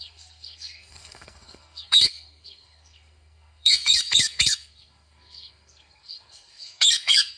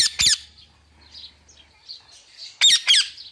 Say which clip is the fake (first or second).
first